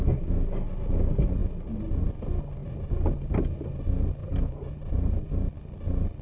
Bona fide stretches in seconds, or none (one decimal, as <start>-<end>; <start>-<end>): 0.0-2.6; 3.8-4.2; 5.5-6.2